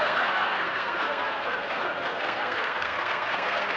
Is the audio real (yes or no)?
no